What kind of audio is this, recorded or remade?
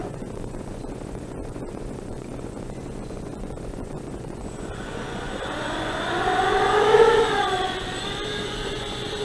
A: remade